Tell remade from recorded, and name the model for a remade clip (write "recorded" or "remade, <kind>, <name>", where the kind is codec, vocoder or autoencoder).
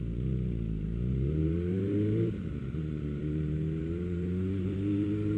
remade, vocoder, BigVGAN v2